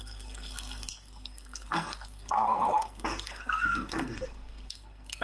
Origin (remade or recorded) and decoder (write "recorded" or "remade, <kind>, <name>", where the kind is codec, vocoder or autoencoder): remade, codec, SNAC